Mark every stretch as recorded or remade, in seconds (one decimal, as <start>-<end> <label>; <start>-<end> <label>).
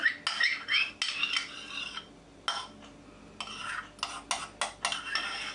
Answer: 0.0-5.5 recorded